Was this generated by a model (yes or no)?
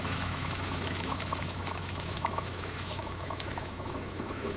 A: yes